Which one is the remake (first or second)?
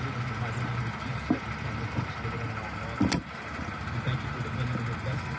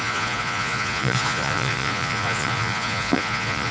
second